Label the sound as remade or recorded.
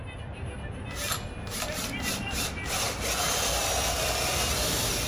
remade